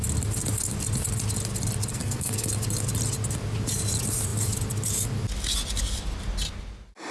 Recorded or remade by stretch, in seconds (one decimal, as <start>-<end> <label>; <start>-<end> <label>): 0.0-1.9 recorded; 1.9-2.5 remade; 2.5-7.1 recorded